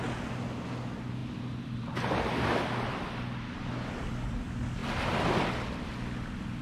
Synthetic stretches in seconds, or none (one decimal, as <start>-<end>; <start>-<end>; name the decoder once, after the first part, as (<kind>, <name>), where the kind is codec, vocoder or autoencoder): none